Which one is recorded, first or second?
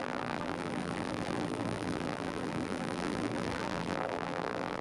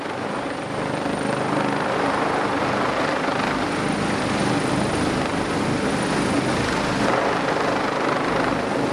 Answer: second